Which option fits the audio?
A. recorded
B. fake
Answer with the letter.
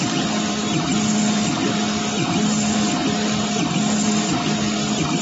A